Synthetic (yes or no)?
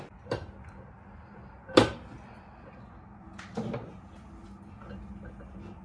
no